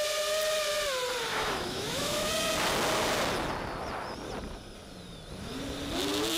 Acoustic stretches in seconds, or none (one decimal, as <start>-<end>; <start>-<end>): 0.0-1.3; 2.3-6.4